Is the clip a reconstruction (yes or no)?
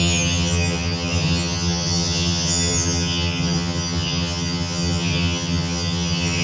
yes